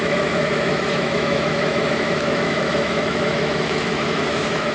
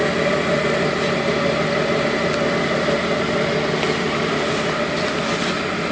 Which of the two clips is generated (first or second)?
first